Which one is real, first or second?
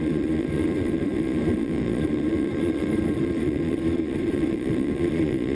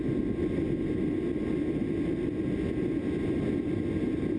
second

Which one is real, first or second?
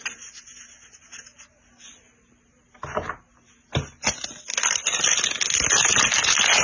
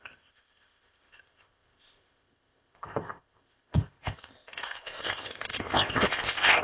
first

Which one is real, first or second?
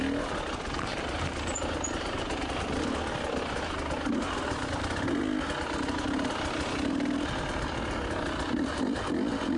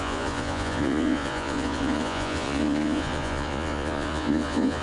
first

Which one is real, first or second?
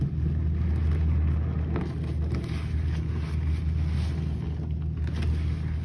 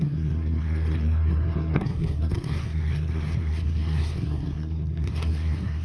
first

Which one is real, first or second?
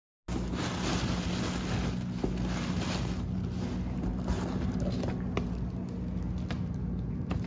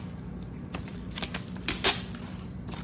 first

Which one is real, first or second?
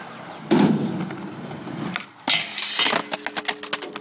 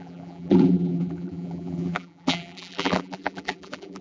first